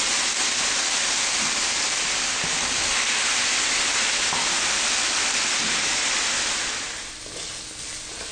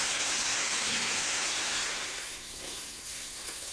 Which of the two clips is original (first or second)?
first